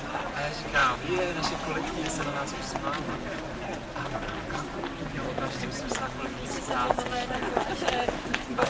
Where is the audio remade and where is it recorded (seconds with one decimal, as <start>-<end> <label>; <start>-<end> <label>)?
0.0-8.7 recorded